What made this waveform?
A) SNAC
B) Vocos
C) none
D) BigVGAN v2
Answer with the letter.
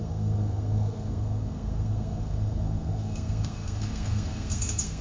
A